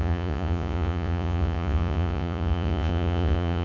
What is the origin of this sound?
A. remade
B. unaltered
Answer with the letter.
A